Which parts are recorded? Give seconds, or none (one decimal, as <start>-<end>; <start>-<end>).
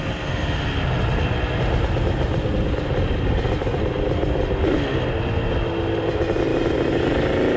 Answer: 0.0-7.6